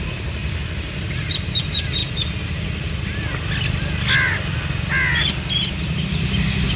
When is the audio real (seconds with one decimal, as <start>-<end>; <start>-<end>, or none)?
0.0-0.4; 1.2-6.8